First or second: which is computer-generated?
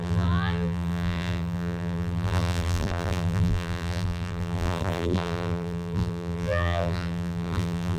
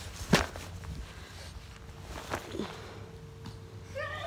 first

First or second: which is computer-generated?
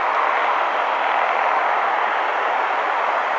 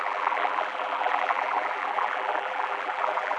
second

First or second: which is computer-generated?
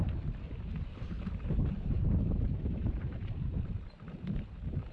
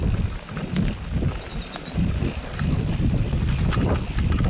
first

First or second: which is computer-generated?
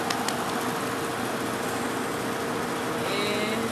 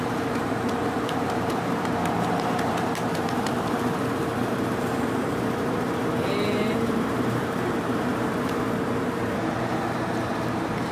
second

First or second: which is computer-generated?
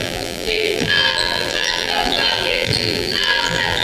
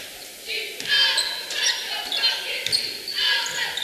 first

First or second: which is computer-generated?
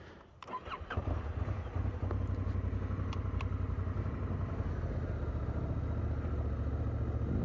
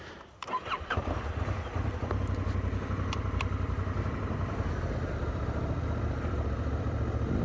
second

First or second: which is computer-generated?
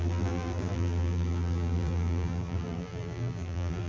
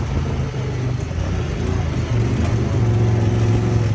first